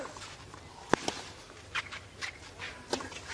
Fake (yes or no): no